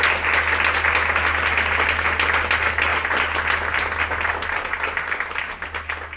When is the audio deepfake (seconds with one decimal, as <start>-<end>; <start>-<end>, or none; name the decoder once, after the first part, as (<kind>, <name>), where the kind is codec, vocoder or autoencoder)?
none